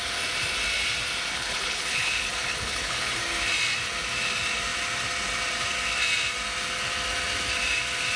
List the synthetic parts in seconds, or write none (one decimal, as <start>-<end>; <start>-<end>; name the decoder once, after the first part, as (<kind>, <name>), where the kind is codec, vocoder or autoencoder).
1.3-3.2 (codec, HILCodec)